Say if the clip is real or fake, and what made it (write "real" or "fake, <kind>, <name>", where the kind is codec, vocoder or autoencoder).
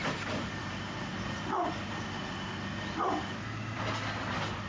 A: real